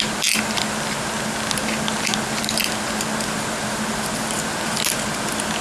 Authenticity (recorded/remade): recorded